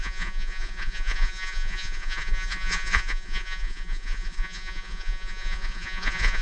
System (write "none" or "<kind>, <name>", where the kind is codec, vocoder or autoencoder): vocoder, Vocos